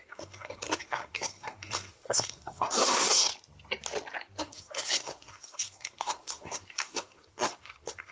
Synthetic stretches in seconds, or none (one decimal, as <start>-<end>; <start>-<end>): 0.0-3.3; 4.4-8.1